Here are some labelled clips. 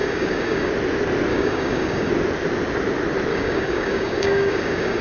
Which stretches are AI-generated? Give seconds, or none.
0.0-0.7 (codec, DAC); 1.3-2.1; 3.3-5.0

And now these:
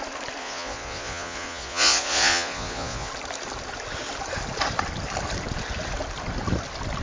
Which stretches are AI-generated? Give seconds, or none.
0.4-3.1 (vocoder, Vocos)

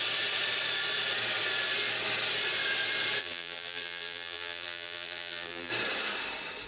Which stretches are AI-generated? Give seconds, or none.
3.2-5.7 (vocoder, BigVGAN v2)

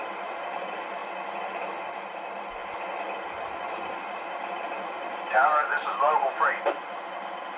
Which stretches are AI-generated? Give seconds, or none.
0.0-1.0 (vocoder, BigVGAN v2); 1.6-7.6